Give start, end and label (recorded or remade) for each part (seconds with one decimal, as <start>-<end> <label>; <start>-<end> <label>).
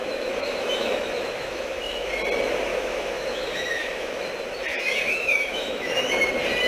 0.0-2.1 remade; 2.1-2.7 recorded; 2.7-4.2 remade; 4.2-4.7 recorded; 4.7-6.1 remade; 6.1-6.7 recorded